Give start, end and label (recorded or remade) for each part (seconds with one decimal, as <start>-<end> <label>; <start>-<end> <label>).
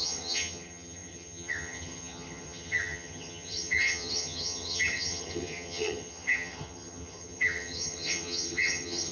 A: 0.0-9.1 remade